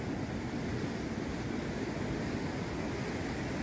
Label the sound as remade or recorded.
recorded